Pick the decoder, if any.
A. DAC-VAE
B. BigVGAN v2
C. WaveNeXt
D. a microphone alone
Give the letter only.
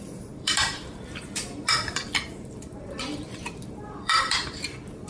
B